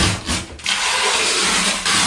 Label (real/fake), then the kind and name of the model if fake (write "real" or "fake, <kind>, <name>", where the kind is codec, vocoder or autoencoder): real